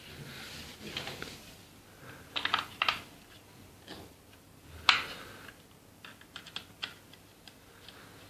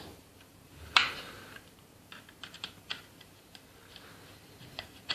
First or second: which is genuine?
first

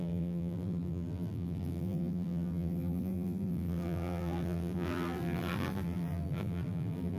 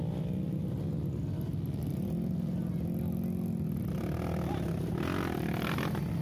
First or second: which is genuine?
second